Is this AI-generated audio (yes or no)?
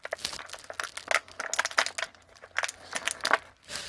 no